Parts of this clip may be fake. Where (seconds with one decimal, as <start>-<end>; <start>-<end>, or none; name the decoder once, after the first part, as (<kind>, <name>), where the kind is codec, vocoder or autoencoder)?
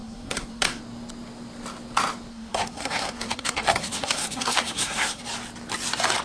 0.0-0.8 (codec, SNAC); 2.3-5.2